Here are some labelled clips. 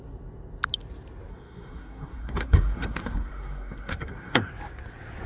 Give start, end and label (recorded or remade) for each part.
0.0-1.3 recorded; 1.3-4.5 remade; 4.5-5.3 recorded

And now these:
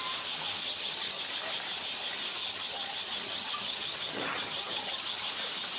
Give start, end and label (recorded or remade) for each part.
0.0-0.6 recorded; 0.6-1.2 remade; 1.2-2.4 recorded; 2.4-5.3 remade; 5.3-5.8 recorded